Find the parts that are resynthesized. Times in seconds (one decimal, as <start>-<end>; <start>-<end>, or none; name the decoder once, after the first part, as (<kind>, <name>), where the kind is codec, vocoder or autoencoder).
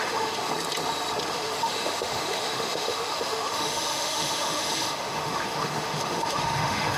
0.0-0.5 (autoencoder, DAC-VAE); 1.3-7.0